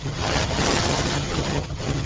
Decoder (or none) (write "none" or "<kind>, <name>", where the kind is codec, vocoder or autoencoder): vocoder, HiFi-GAN